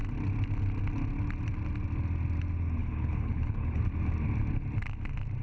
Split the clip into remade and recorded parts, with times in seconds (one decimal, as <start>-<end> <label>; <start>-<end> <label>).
0.0-2.8 recorded; 2.8-3.8 remade; 3.8-5.4 recorded